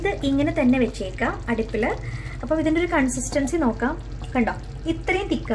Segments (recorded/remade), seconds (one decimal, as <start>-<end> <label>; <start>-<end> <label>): 0.0-5.5 recorded